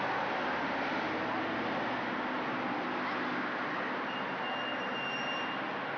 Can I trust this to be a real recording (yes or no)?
yes